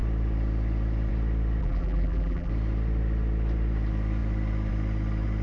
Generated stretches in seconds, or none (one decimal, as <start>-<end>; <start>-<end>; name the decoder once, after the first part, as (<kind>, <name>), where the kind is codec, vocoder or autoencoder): 1.6-2.5 (vocoder, BigVGAN v2)

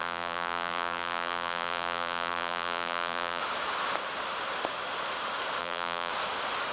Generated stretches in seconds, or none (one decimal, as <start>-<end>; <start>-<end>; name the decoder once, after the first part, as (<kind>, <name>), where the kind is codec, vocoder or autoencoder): 0.0-3.4 (vocoder, BigVGAN v2); 5.6-6.1